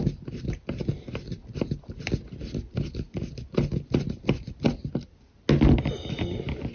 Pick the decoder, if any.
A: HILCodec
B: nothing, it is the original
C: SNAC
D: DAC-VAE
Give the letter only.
B